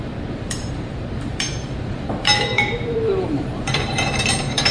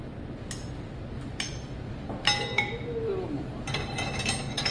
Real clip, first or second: second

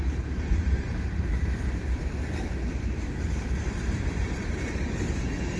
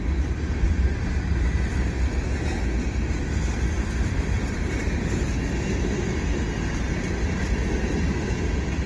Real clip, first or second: second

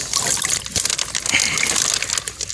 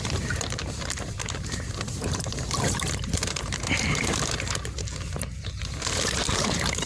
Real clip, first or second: first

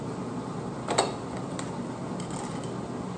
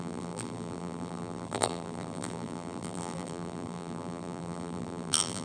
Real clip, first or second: first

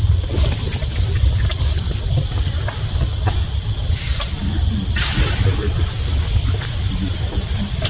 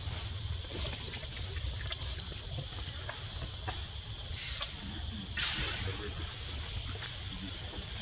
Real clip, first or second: second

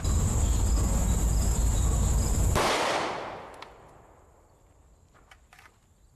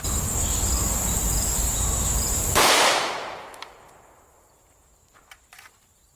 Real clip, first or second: first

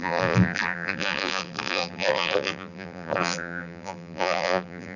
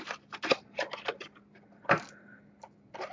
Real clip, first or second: second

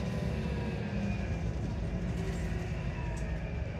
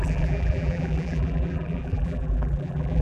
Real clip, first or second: first